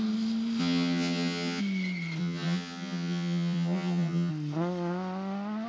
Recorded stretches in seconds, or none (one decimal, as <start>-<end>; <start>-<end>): 0.0-0.6; 1.6-2.2; 4.3-5.7